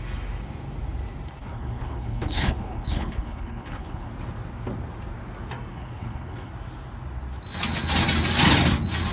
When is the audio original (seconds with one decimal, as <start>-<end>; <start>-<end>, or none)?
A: 0.0-1.4; 4.1-5.7; 6.5-9.1